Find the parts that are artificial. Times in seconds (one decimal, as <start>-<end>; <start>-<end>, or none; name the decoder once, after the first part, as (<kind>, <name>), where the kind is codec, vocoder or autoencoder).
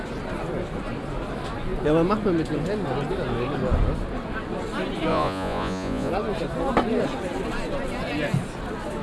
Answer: 5.1-6.1 (vocoder, Vocos)